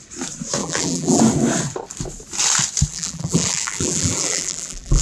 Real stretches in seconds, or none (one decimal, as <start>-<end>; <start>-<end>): 0.0-0.6; 1.2-2.9